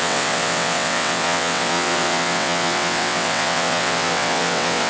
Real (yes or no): no